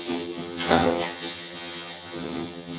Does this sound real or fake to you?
fake